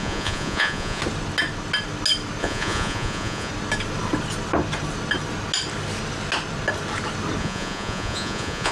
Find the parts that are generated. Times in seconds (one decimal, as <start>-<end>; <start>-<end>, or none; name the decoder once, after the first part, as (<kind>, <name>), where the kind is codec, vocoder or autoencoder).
0.0-1.0 (vocoder, Vocos); 2.4-3.5; 7.4-8.7